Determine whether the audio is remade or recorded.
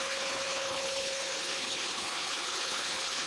remade